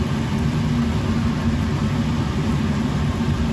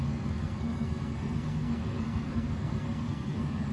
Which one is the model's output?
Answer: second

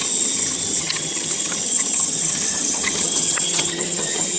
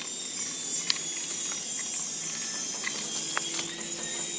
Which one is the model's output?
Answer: first